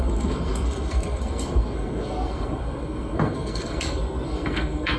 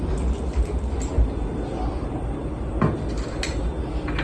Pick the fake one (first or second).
first